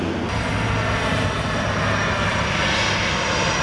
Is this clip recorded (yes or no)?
yes